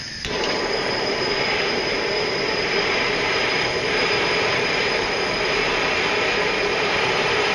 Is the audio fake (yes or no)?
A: yes